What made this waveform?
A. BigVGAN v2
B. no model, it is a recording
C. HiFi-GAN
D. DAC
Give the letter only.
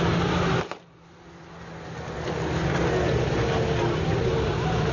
B